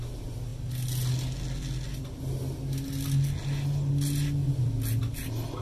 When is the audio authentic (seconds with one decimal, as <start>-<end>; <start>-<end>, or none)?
0.0-5.6